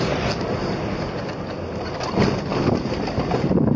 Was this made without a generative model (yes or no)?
yes